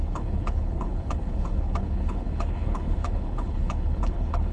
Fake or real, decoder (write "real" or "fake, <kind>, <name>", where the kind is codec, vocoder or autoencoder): fake, codec, HILCodec